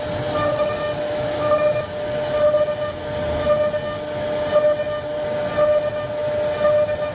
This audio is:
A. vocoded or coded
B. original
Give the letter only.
B